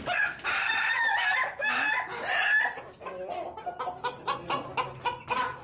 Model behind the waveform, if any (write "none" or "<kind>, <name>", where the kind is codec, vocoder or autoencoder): none